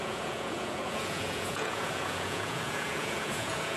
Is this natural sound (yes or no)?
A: no